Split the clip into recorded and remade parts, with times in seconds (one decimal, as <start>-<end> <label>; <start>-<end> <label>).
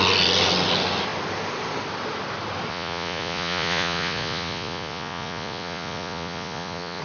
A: 0.0-2.7 recorded; 2.7-7.0 remade